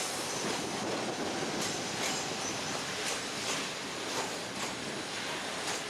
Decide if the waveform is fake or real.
real